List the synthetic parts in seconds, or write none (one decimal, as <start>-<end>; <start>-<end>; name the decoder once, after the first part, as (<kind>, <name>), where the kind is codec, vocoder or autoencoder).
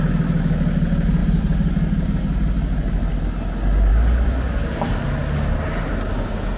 none